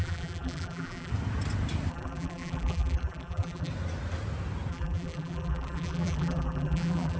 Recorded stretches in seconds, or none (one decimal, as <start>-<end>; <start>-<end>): 1.1-1.9; 3.7-4.7